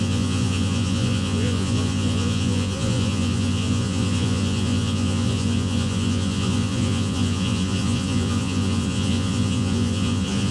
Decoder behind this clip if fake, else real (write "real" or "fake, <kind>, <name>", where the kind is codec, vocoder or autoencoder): fake, vocoder, Vocos